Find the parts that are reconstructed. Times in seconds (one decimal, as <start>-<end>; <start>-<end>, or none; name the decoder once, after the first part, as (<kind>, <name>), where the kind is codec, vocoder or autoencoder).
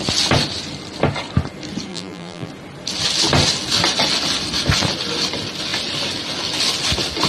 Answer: 1.9-2.5 (vocoder, BigVGAN v2)